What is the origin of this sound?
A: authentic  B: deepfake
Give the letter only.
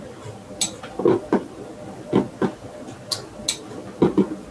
A